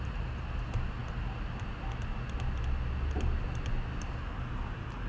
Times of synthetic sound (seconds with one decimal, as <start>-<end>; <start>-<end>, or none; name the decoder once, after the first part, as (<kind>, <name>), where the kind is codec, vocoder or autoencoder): none